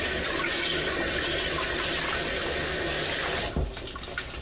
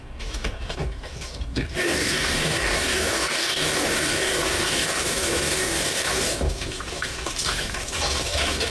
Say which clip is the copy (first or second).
second